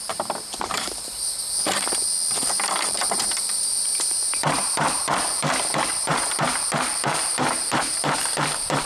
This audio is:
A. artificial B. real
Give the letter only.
A